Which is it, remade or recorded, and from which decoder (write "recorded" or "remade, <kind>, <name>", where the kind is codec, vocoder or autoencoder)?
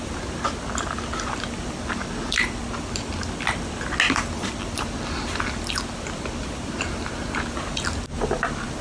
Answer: recorded